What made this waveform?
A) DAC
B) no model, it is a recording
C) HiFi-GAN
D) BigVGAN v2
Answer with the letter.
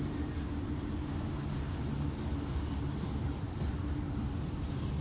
B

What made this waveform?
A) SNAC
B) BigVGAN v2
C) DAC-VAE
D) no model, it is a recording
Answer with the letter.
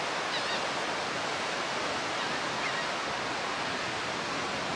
D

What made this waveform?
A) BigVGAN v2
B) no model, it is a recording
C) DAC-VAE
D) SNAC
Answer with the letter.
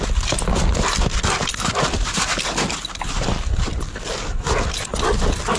B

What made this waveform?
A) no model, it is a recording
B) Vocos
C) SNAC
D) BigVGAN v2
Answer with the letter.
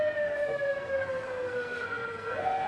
C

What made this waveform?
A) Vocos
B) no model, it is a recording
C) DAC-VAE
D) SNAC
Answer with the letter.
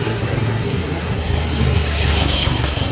D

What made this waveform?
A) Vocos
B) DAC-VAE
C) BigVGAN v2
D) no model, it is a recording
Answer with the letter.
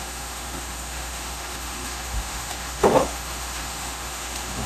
B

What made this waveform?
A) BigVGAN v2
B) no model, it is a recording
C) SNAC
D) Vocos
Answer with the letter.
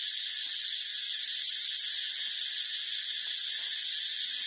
B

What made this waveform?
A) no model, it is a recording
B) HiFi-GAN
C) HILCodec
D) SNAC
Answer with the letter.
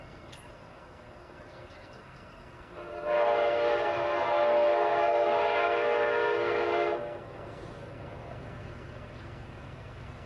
D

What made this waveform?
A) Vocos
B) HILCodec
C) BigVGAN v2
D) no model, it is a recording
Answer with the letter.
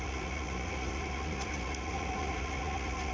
A